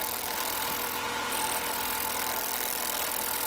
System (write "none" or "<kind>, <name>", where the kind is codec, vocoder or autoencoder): none